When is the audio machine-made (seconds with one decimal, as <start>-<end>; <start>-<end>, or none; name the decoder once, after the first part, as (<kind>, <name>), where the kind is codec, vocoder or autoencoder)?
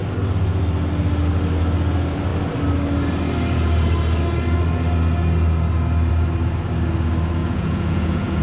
7.4-8.4 (vocoder, Vocos)